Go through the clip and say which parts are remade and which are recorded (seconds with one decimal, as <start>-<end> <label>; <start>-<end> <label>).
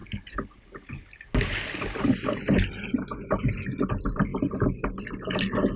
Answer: 0.0-5.8 recorded